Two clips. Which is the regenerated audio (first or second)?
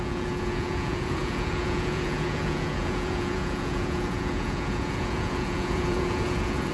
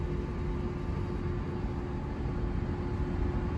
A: first